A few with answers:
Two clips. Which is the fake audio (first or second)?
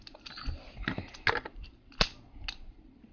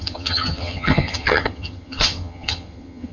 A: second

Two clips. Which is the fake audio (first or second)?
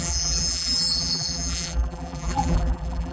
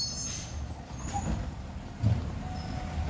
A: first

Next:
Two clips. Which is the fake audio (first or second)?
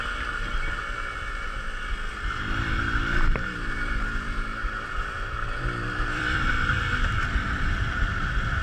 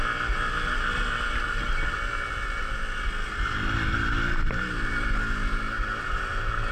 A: first